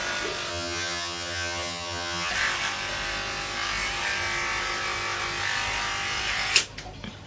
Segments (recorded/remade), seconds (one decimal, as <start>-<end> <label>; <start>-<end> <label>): 0.0-0.5 recorded; 0.5-2.3 remade; 2.3-7.3 recorded